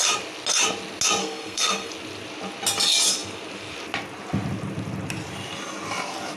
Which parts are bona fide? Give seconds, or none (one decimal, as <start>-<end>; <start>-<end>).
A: 0.0-1.2; 1.9-6.4